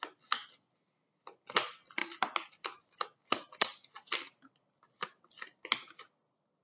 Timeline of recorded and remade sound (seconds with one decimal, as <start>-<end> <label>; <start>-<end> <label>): 0.0-6.6 recorded